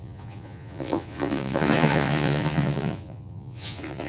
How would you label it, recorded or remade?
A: remade